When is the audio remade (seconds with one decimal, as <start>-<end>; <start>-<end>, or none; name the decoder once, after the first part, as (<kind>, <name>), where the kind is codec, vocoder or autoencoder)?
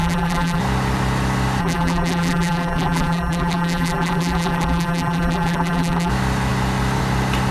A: 0.0-0.6 (vocoder, BigVGAN v2); 1.6-6.1